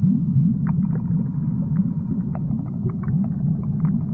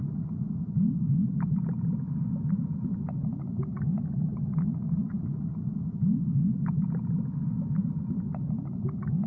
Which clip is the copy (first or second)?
first